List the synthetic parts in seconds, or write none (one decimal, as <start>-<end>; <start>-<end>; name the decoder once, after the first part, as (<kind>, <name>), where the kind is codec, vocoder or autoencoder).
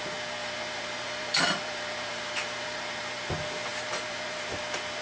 0.4-3.3 (vocoder, BigVGAN v2); 3.7-4.6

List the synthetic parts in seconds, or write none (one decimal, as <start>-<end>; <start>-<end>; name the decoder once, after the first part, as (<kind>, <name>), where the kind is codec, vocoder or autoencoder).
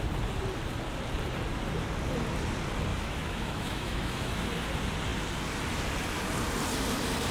2.9-4.4 (autoencoder, DAC-VAE)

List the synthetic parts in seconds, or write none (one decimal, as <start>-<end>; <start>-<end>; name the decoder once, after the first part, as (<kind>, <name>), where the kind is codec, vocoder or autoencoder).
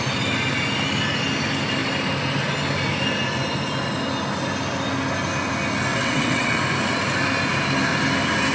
5.9-6.6 (vocoder, WaveNeXt)